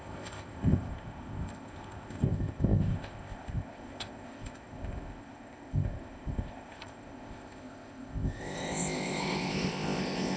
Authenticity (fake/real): fake